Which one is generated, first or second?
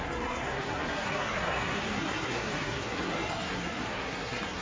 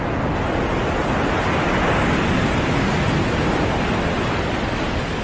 first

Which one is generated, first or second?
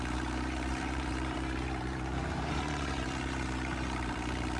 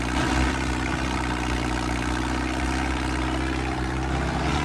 first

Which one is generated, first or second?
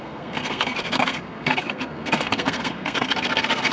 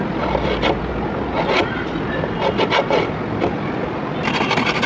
first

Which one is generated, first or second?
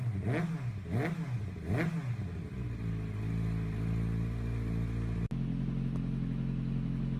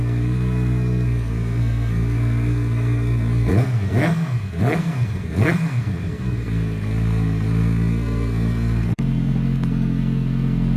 second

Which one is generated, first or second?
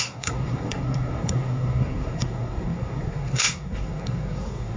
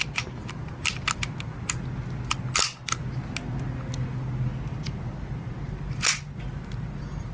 first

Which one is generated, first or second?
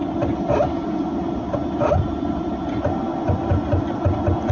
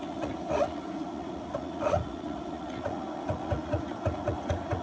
second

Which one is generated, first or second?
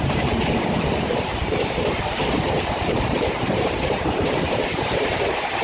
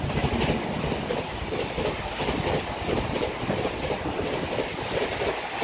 first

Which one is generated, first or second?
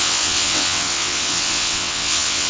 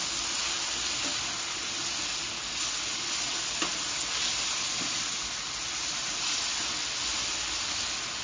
first